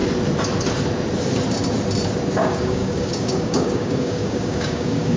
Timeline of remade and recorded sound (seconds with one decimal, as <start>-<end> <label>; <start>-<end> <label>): 0.0-2.4 recorded; 2.4-5.2 remade